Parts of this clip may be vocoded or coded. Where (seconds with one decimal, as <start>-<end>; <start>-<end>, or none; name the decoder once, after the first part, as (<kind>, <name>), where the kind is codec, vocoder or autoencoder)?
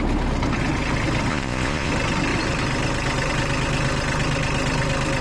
1.3-1.9 (vocoder, Vocos)